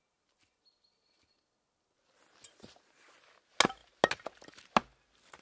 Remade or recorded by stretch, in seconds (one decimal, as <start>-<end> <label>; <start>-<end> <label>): 0.0-5.4 recorded